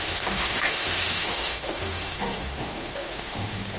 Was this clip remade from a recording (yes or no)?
yes